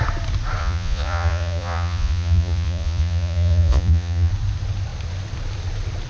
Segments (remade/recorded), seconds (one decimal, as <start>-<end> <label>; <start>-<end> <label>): 0.0-0.6 recorded; 0.6-4.3 remade; 4.3-6.1 recorded

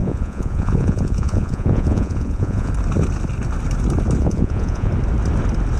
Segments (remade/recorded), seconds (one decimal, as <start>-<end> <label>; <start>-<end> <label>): 0.0-2.7 remade; 2.7-4.2 recorded; 4.2-4.9 remade; 4.9-5.8 recorded

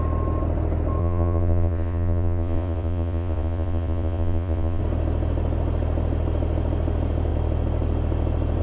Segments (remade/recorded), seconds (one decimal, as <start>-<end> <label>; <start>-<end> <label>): 0.0-1.0 recorded; 1.0-4.8 remade; 4.8-8.6 recorded

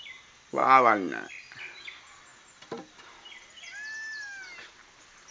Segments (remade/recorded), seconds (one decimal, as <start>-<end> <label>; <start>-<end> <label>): 0.0-5.3 recorded

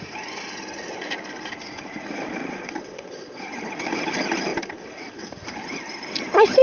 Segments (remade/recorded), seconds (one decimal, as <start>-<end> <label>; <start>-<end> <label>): 0.0-2.4 recorded; 2.4-3.6 remade; 3.6-6.6 recorded

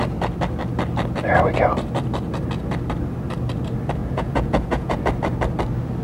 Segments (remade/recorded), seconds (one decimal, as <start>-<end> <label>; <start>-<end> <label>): 0.0-4.0 recorded; 4.0-5.0 remade; 5.0-6.0 recorded